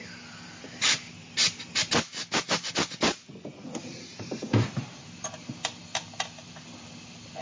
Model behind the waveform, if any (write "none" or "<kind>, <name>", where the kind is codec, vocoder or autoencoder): none